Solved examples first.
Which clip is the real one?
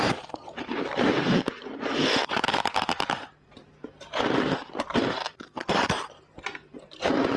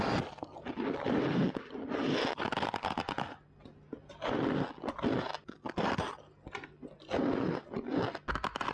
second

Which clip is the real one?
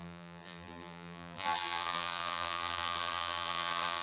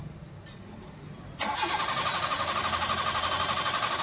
second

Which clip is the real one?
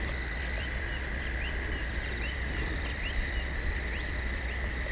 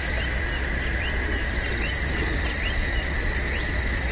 first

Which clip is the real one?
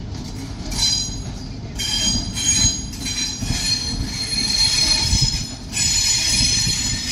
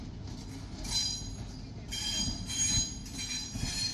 second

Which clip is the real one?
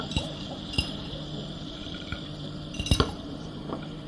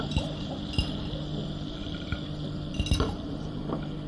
second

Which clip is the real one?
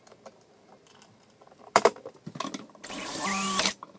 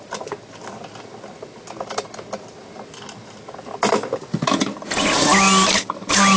second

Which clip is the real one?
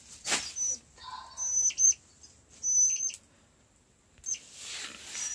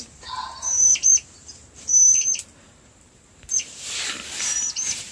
first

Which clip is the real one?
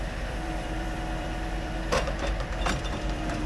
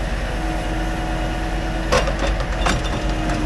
second